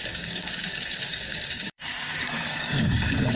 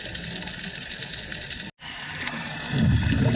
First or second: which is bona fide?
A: second